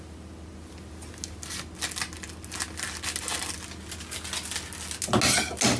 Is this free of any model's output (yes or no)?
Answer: yes